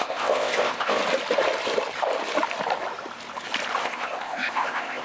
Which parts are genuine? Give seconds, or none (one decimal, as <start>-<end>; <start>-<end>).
1.0-3.8